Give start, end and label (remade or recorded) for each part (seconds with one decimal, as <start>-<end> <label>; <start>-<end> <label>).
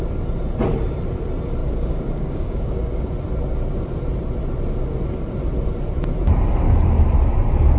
0.0-1.6 recorded; 1.6-3.1 remade; 3.1-7.8 recorded